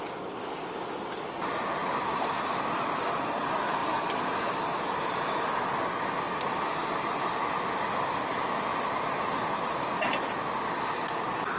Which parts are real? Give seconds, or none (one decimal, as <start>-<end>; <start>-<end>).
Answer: 0.0-1.8; 3.4-8.7; 9.8-11.6